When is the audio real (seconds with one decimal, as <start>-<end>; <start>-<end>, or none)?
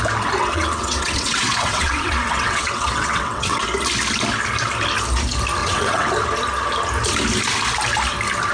0.0-0.4; 3.6-5.6; 6.1-8.5